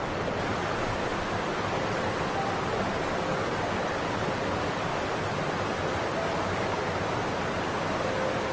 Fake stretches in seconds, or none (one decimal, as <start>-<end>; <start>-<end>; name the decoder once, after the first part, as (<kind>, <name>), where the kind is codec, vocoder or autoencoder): none